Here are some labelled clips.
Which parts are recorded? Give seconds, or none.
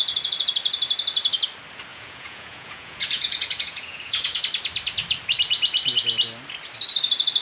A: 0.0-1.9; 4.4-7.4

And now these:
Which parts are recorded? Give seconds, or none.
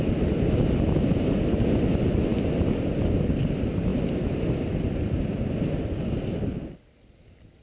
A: 0.0-7.6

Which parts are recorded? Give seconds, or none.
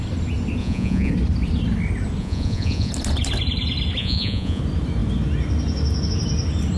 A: 0.0-0.6; 1.1-2.2; 2.9-4.0; 4.6-6.8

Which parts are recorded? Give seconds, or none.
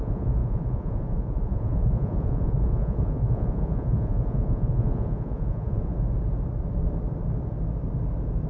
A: 5.9-8.5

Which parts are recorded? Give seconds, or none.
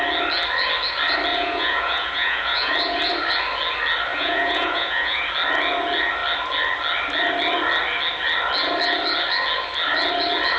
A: 0.0-1.3; 2.7-4.1; 5.2-10.6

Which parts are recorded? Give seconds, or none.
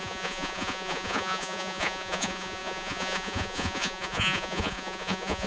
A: none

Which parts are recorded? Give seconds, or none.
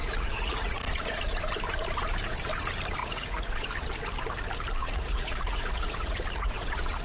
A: 1.2-3.0; 3.7-4.8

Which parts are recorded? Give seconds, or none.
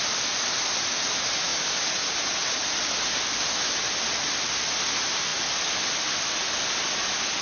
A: 0.0-7.4